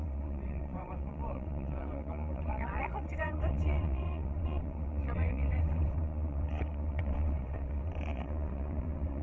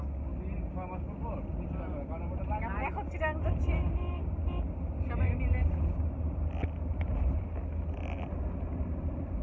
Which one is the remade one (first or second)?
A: first